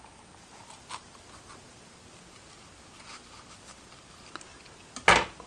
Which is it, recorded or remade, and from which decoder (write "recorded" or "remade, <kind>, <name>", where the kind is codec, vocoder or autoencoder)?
recorded